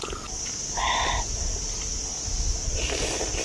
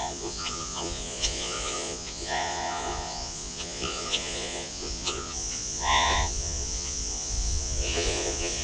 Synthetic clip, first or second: second